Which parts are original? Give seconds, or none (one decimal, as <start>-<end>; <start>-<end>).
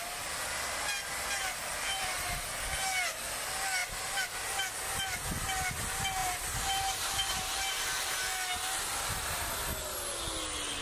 0.0-1.7; 2.5-3.8; 4.6-6.2; 8.1-10.8